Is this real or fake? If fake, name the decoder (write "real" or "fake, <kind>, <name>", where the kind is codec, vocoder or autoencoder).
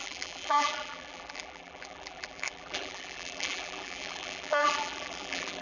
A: fake, vocoder, BigVGAN v2